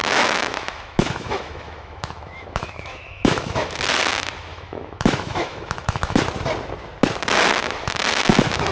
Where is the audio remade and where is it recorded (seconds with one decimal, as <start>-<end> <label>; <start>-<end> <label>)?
0.0-4.0 remade; 4.0-4.5 recorded; 4.5-6.2 remade; 6.2-8.7 recorded